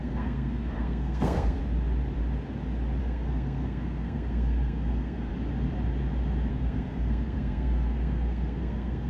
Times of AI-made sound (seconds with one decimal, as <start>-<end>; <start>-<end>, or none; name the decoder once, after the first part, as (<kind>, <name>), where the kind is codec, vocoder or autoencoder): 0.0-1.6 (codec, SNAC); 3.0-5.3; 6.5-9.1